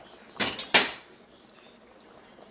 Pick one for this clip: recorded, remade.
recorded